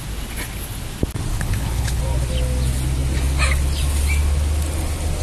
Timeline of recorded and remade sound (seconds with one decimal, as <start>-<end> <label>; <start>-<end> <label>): 0.0-1.3 recorded; 1.3-2.0 remade; 2.0-5.2 recorded